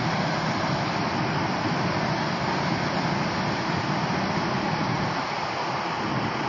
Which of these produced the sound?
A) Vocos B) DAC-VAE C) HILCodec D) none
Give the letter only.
D